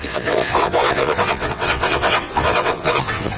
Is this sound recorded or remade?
remade